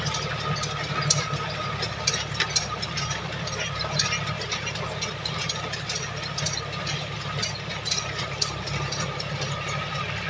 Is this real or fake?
real